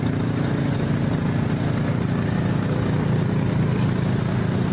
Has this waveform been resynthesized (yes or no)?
no